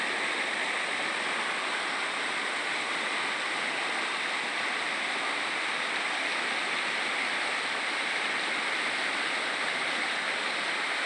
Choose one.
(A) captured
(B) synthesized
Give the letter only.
A